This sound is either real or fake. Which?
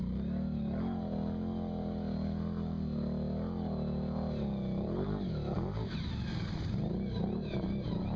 real